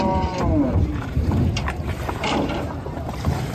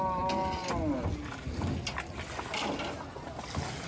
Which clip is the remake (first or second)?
first